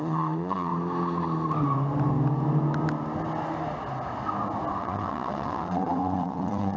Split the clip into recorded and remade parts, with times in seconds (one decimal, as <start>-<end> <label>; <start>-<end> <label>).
0.0-0.7 remade; 0.7-4.8 recorded; 4.8-6.8 remade